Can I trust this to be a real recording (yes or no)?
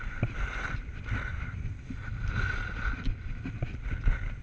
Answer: yes